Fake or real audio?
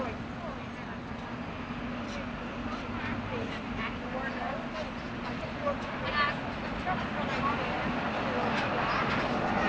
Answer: real